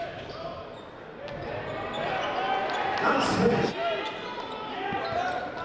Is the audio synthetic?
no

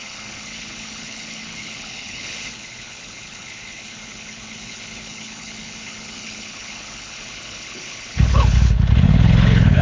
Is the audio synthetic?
yes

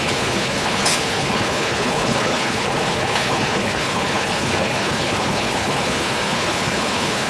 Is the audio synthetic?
yes